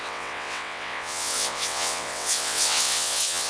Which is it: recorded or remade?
remade